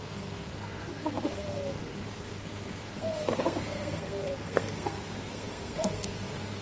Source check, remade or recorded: remade